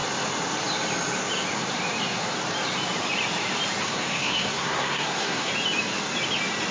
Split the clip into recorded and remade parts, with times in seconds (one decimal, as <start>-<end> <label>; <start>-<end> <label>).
0.0-3.8 recorded; 3.8-5.5 remade; 5.5-6.7 recorded